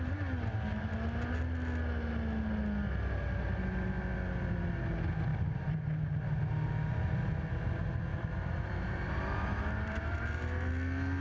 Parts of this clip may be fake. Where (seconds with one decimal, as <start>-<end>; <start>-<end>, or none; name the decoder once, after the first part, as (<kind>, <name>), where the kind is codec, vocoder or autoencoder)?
5.3-6.2 (vocoder, BigVGAN v2); 8.1-10.7